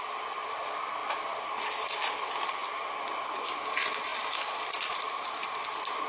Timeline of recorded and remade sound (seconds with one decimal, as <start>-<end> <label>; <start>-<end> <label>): 0.0-6.1 recorded